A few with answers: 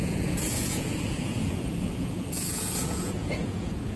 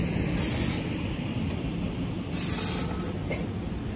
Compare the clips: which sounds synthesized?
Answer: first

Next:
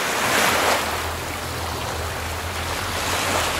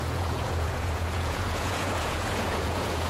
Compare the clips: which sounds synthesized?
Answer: second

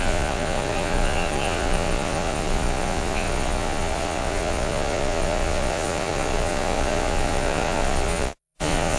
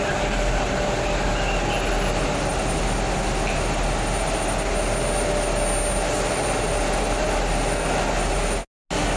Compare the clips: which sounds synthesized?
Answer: first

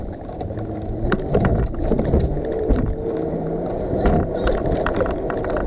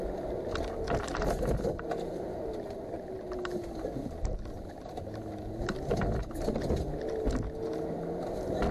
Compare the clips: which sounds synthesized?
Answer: first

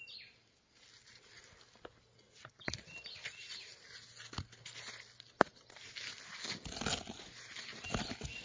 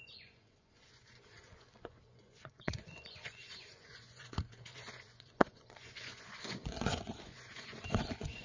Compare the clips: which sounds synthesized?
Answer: second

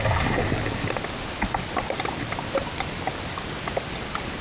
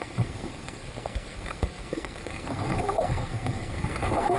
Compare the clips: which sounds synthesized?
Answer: second